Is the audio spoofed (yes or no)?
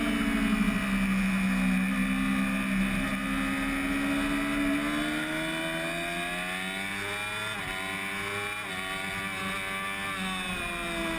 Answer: no